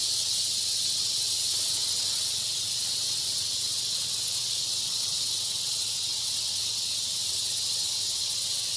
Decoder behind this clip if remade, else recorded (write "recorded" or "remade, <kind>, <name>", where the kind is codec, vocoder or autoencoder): remade, vocoder, WaveNeXt